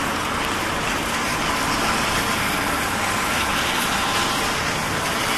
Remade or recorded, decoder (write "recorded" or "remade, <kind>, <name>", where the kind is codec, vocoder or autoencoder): recorded